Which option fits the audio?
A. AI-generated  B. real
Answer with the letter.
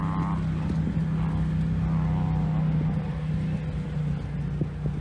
B